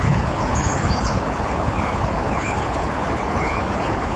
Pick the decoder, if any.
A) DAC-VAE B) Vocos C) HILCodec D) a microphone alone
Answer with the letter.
C